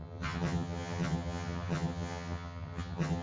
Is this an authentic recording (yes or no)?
no